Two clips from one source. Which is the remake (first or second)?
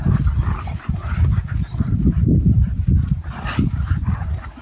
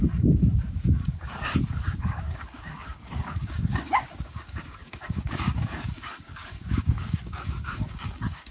second